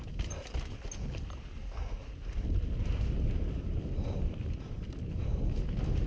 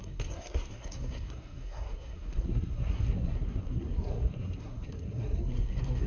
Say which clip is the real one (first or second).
first